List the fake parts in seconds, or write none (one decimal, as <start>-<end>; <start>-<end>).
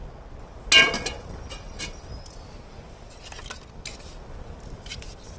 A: none